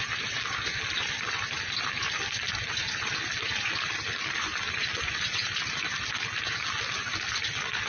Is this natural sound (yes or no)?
yes